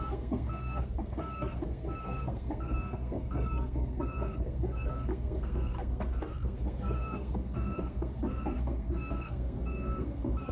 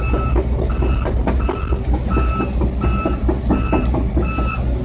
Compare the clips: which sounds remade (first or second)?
first